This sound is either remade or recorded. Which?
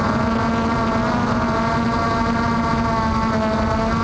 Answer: recorded